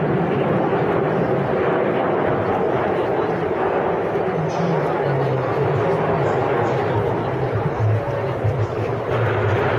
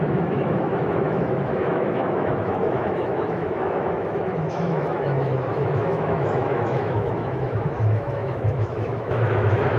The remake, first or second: second